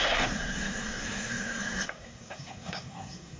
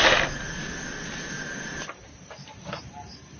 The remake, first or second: first